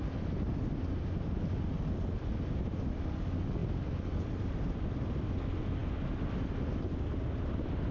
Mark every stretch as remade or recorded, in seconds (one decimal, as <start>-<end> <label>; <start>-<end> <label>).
0.0-3.6 recorded; 3.6-5.0 remade; 5.0-7.9 recorded